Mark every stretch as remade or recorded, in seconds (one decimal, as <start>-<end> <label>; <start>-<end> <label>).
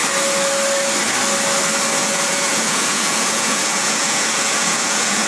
0.0-2.0 recorded; 2.0-5.3 remade